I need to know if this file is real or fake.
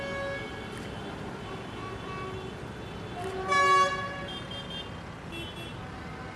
real